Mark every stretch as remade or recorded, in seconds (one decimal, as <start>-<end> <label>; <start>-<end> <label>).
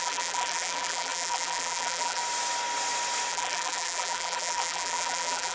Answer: 0.0-2.2 remade; 2.2-3.3 recorded; 3.3-5.5 remade